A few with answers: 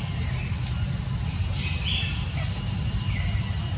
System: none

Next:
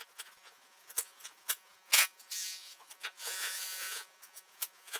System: vocoder, Vocos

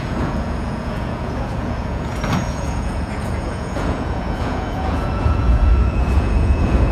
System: vocoder, Vocos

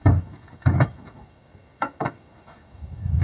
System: autoencoder, DAC-VAE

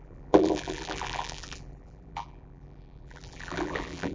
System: vocoder, BigVGAN v2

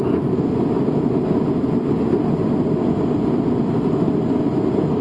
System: none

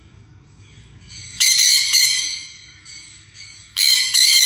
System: codec, DAC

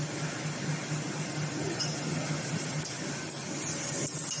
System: none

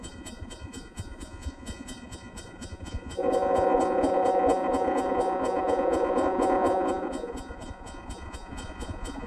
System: vocoder, Vocos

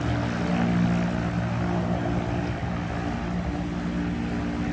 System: none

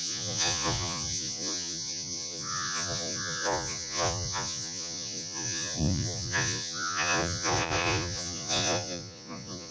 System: vocoder, Vocos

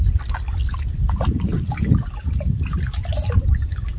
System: none